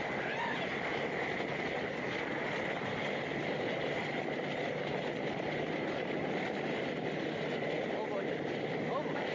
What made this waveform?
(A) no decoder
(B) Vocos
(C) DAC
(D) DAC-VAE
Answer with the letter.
A